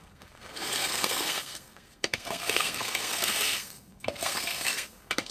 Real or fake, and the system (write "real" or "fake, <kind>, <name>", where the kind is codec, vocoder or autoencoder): fake, codec, SNAC